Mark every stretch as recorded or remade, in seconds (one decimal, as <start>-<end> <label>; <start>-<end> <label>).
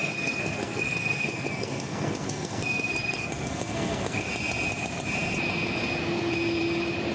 0.0-4.3 remade; 4.3-7.1 recorded